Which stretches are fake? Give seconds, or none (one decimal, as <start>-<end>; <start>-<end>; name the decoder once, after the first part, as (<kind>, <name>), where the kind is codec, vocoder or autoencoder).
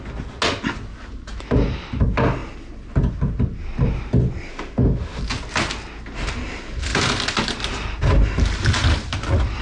4.5-5.2 (autoencoder, DAC-VAE)